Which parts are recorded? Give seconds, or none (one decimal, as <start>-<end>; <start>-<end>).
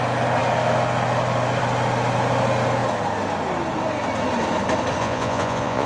0.0-5.0